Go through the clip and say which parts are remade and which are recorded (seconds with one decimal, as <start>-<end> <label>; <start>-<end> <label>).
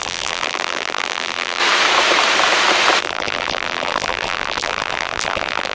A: 0.0-1.6 remade; 1.6-3.0 recorded; 3.0-5.7 remade